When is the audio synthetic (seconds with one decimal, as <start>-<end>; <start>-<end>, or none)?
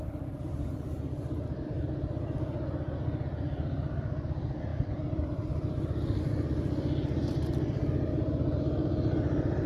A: 4.7-6.2